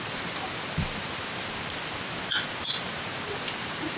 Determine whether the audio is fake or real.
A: fake